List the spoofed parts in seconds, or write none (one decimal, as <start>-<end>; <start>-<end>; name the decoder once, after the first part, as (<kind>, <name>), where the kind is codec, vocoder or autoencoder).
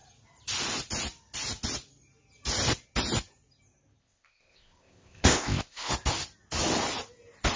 4.0-5.9 (codec, ZipCodec)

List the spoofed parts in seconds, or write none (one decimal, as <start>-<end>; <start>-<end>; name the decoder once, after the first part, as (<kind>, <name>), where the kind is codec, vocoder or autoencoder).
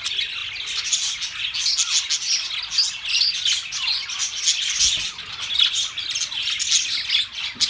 none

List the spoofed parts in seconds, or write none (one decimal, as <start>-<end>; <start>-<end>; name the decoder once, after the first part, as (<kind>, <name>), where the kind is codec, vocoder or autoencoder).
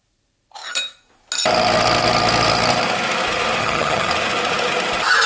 3.6-4.1 (vocoder, HiFi-GAN)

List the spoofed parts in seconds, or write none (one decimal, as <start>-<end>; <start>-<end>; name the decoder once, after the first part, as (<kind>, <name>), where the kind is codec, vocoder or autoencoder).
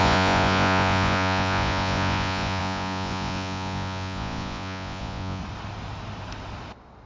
0.0-5.4 (vocoder, Vocos)